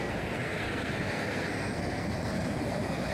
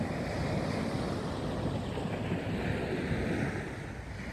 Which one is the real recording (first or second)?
second